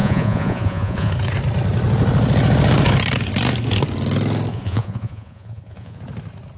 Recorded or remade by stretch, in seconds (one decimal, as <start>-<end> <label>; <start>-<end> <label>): 0.0-1.1 remade; 1.1-4.5 recorded; 4.5-6.0 remade; 6.0-6.6 recorded